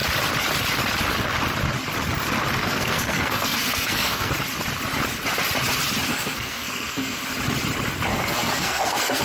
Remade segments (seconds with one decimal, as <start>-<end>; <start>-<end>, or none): 2.6-4.3; 6.1-7.2; 8.1-9.2